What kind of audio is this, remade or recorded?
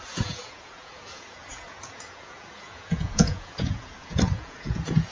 remade